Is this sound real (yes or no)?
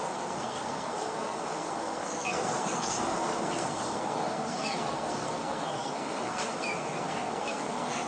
no